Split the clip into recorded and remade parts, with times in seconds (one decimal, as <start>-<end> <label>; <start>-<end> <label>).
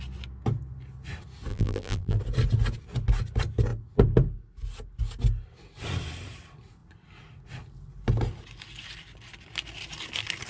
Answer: 0.0-1.5 recorded; 1.5-2.2 remade; 2.2-10.5 recorded